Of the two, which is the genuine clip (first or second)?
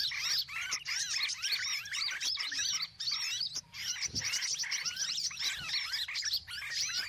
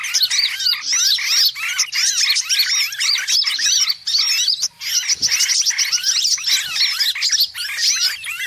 second